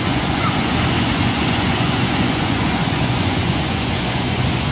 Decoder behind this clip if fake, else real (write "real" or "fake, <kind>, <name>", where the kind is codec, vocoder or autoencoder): fake, vocoder, Vocos